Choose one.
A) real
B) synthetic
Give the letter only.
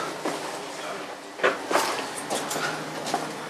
A